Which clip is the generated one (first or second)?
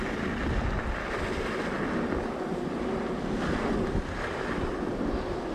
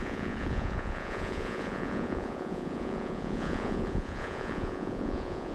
second